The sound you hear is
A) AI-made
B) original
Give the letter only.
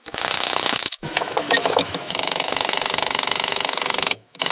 A